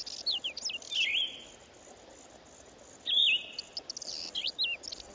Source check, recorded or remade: recorded